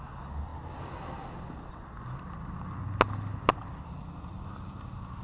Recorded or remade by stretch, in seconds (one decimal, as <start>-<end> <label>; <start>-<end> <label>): 0.0-5.2 recorded